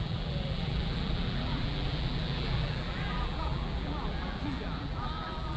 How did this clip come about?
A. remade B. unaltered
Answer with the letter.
A